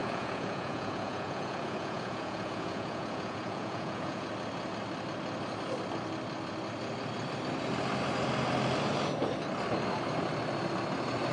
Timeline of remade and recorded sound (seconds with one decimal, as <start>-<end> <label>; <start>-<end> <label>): 0.0-4.3 remade; 4.3-11.3 recorded